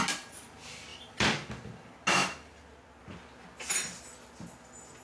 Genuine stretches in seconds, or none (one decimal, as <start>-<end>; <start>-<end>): 0.0-5.0